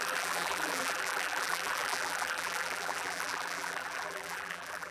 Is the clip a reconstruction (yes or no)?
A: yes